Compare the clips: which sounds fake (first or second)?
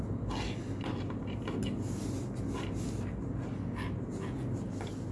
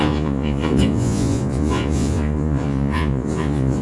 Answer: second